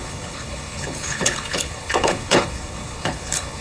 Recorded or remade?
remade